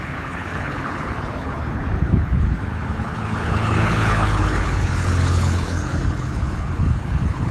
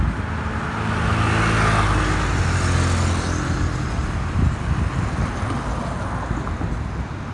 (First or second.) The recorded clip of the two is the second